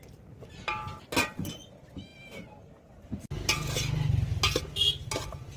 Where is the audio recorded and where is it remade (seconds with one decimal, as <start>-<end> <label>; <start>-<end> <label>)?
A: 0.0-5.6 recorded